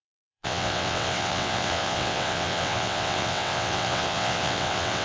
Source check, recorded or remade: remade